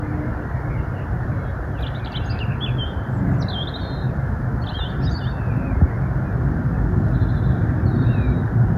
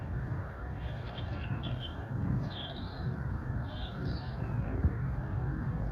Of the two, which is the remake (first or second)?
second